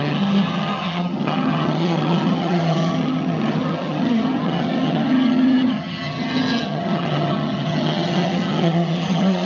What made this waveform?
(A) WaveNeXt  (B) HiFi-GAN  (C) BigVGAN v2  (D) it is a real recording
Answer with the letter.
B